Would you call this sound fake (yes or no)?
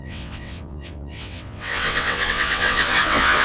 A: yes